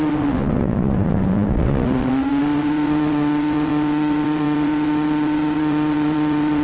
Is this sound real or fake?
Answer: fake